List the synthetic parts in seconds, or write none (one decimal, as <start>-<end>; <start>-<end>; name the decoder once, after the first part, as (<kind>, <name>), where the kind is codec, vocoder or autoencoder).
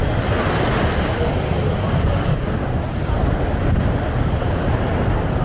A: 3.6-4.9 (vocoder, BigVGAN v2)